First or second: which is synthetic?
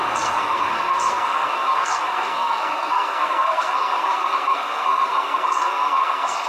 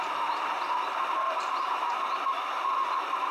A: first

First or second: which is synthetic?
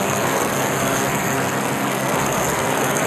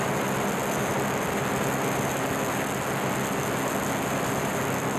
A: first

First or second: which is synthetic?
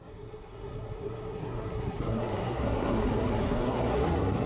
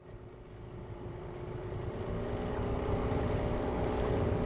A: first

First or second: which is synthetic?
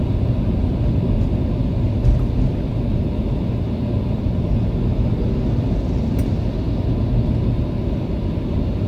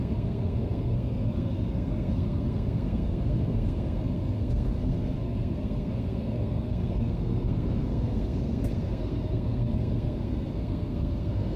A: second